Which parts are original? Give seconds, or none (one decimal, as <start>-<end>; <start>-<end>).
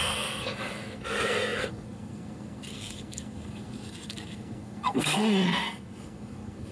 none